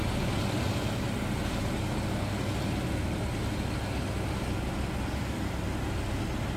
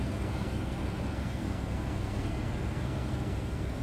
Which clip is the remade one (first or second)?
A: second